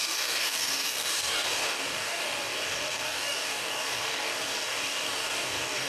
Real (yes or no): no